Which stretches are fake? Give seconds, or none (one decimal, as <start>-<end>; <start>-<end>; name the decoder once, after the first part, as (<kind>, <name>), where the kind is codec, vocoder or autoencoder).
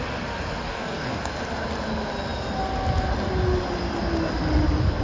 0.6-1.2 (codec, DAC)